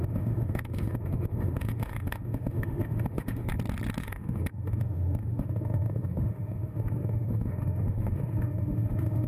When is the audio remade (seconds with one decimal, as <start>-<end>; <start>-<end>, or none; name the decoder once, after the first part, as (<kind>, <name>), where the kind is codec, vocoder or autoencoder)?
0.0-3.5 (autoencoder, DAC-VAE); 4.0-9.3